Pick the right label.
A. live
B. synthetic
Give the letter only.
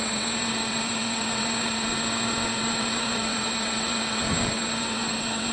B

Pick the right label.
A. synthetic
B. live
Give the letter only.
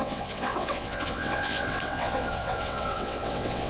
A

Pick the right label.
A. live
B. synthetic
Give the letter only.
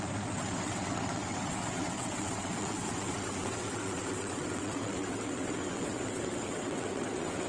B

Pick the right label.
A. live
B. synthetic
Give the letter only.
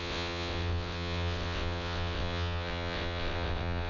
B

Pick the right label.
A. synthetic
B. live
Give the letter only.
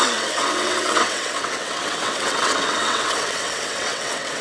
A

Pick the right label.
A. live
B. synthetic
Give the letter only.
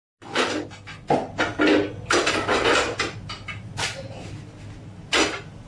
A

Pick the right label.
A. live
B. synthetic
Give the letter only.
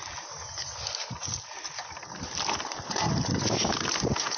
A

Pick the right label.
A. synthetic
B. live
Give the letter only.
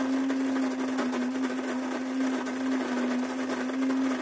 B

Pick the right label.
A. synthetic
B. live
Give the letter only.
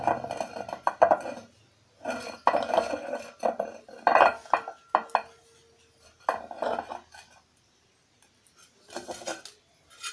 B